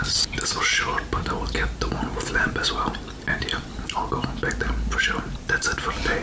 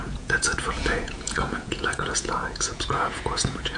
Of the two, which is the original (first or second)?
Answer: first